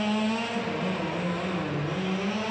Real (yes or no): yes